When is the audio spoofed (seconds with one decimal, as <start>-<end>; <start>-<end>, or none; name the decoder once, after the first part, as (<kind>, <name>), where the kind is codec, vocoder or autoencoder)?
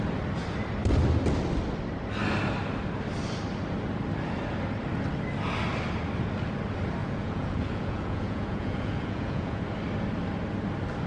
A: 7.0-9.6 (vocoder, Vocos)